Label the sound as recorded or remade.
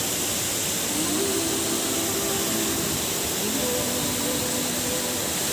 recorded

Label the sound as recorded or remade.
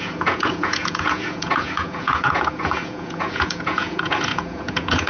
remade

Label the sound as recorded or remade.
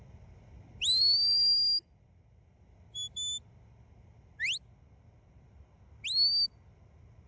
recorded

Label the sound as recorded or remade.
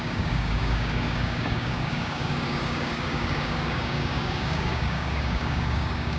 remade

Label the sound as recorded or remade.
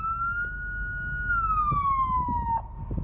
recorded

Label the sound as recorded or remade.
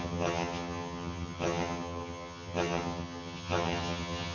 remade